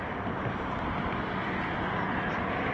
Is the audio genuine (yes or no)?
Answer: yes